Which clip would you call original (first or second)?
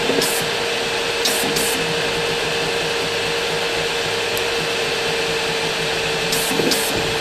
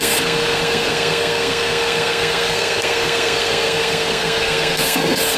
first